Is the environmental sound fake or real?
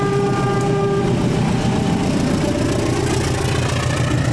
real